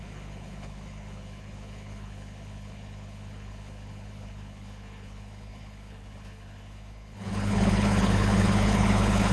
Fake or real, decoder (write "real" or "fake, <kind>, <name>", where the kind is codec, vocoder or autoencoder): fake, codec, HILCodec